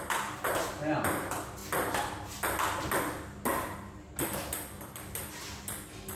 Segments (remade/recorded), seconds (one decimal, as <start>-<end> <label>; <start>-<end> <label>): 0.0-1.6 remade; 1.6-4.8 recorded; 4.8-5.2 remade; 5.2-6.2 recorded